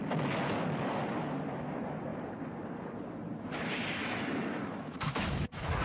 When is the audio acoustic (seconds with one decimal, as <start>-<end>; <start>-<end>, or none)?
0.0-4.0